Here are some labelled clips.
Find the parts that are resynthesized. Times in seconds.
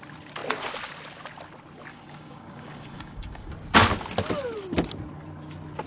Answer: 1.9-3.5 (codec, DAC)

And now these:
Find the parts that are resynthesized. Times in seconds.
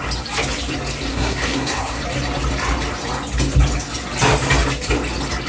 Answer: 1.1-2.0 (codec, SNAC)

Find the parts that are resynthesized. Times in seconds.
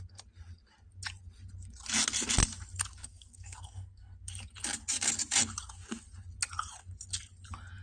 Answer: 3.0-4.3 (codec, SNAC)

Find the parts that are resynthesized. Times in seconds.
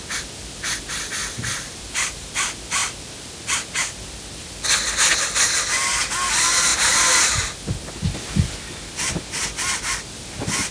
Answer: 1.2-2.3 (vocoder, BigVGAN v2); 6.7-7.5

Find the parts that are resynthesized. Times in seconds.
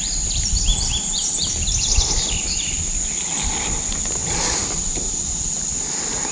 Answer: none